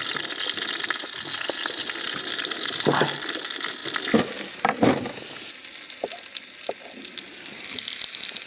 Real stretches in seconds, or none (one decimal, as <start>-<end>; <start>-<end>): 0.0-8.5